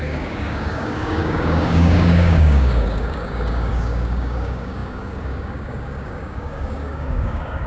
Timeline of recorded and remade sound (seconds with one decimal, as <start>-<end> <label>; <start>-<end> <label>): 0.0-7.7 remade